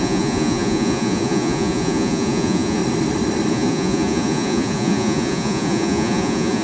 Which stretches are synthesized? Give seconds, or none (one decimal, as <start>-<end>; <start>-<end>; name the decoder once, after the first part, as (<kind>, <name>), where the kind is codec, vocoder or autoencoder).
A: 0.0-2.8 (vocoder, Vocos); 3.5-6.6